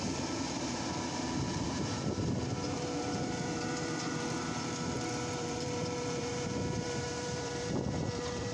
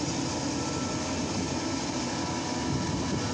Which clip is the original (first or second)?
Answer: second